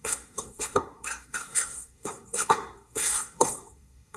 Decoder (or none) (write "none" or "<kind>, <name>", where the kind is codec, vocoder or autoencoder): codec, SNAC